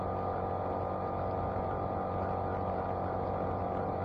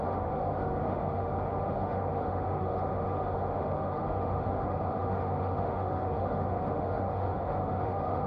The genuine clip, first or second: first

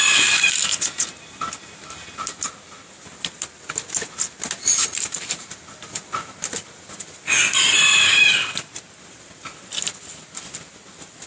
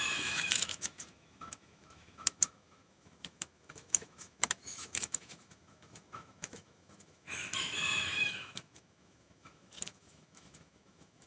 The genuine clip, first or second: first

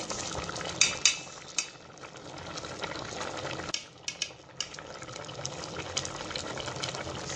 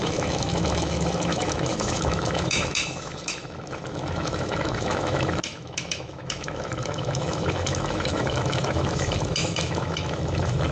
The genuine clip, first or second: first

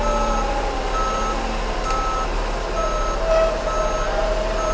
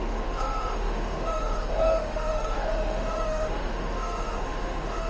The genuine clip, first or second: first